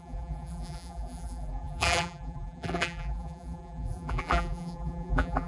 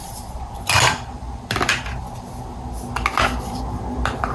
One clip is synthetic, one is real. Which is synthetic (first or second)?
first